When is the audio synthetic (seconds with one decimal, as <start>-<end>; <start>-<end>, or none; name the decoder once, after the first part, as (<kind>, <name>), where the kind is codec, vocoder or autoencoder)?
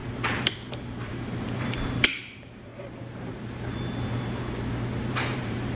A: 0.0-2.7 (vocoder, BigVGAN v2); 5.1-5.8